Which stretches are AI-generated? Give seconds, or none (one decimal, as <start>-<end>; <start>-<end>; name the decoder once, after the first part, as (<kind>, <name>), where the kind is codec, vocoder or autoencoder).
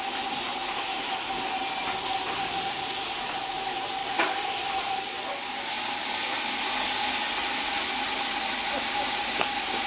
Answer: 4.0-5.3 (vocoder, BigVGAN v2)